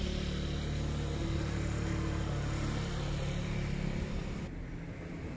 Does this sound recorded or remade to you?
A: recorded